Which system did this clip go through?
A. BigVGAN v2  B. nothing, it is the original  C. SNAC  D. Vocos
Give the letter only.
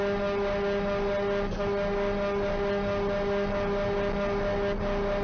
B